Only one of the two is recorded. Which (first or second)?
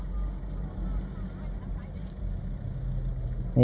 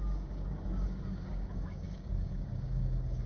first